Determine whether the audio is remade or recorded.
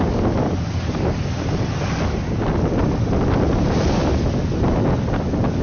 recorded